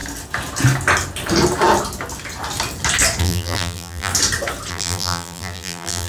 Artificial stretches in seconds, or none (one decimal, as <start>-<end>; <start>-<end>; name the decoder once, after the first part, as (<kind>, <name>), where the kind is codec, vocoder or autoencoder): 3.2-4.1 (vocoder, BigVGAN v2); 4.7-6.1